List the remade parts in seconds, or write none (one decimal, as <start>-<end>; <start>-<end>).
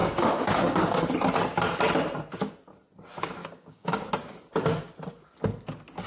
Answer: 0.0-1.0; 3.4-4.1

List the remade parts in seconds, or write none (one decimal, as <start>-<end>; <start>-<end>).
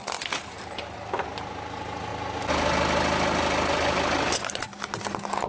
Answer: none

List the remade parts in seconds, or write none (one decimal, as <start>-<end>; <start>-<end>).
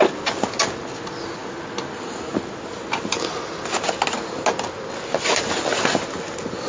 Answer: none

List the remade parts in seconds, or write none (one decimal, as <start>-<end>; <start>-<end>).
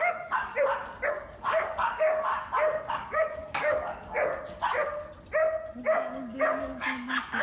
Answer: 0.0-0.5; 1.1-2.3; 2.9-4.3; 5.8-7.4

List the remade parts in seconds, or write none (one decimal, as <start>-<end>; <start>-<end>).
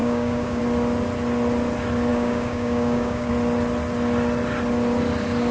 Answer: 0.0-0.6; 2.1-3.3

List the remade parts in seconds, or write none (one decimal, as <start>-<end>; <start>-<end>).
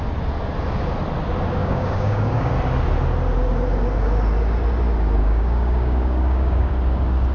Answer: 1.6-2.5; 5.2-6.7